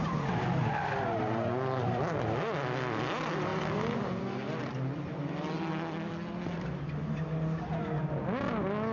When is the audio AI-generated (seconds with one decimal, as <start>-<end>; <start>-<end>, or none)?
none